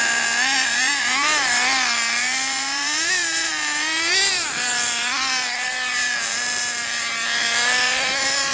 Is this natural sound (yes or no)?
no